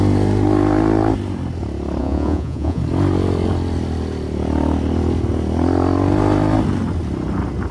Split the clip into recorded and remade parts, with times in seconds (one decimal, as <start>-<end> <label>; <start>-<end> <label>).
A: 0.0-2.0 recorded; 2.0-2.8 remade; 2.8-7.7 recorded